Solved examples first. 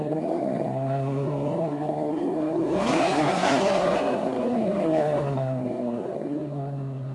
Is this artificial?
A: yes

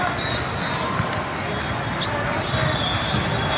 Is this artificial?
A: no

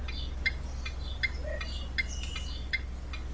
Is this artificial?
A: no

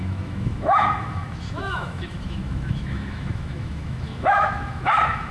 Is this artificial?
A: yes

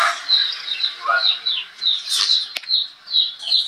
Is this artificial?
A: no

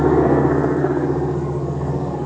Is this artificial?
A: yes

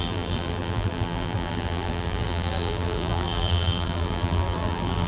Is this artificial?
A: yes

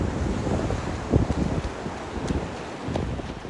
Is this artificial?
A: no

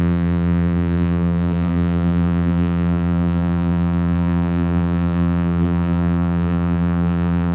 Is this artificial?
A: yes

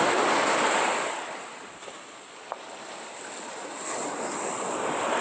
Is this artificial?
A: no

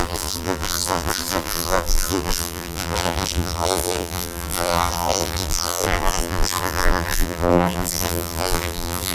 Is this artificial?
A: yes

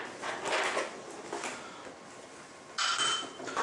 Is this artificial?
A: no